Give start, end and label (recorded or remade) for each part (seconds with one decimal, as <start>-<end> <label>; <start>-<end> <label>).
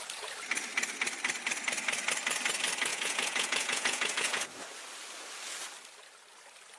0.0-2.9 recorded; 2.9-4.5 remade; 4.5-6.8 recorded